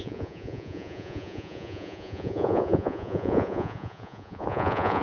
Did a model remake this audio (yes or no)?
yes